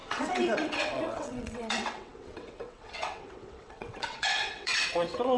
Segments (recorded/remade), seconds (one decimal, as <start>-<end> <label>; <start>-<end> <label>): 0.0-5.4 remade